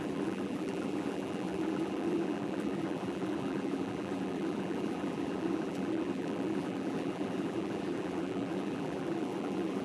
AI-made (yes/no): yes